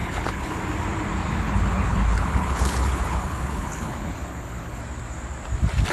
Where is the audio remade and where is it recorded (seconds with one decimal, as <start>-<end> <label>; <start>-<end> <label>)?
0.0-0.6 remade; 0.6-1.3 recorded; 1.3-4.8 remade; 4.8-5.9 recorded